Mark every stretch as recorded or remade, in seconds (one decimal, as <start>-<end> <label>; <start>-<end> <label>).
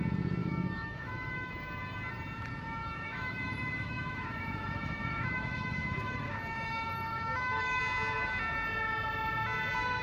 0.0-0.4 recorded; 0.4-1.5 remade; 1.5-2.8 recorded; 2.8-7.8 remade; 7.8-10.0 recorded